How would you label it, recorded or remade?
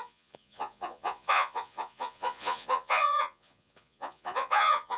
remade